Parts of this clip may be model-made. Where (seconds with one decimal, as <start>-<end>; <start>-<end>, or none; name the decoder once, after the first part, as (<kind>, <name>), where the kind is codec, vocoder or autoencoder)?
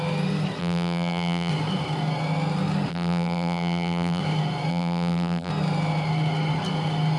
0.6-1.5 (vocoder, BigVGAN v2); 2.9-4.2; 4.7-5.5